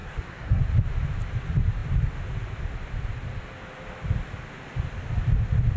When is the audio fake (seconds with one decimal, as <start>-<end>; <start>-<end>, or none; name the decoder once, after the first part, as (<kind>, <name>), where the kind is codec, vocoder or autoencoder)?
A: 0.0-0.6 (codec, SNAC)